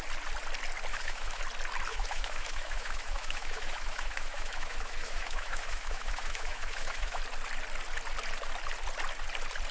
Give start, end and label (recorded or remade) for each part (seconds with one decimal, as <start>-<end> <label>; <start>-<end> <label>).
0.0-0.9 recorded; 0.9-1.4 remade; 1.4-1.9 recorded; 1.9-7.2 remade; 7.2-9.7 recorded